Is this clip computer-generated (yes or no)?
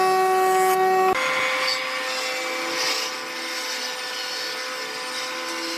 no